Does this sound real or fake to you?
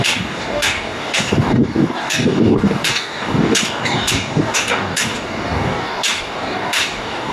fake